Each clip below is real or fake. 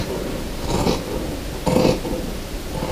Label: real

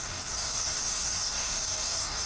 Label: fake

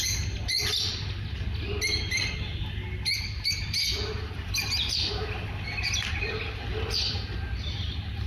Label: real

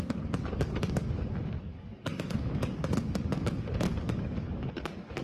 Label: fake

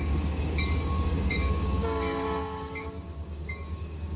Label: fake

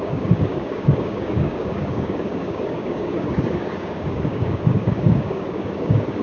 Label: fake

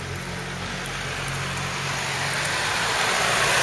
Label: real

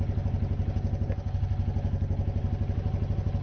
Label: real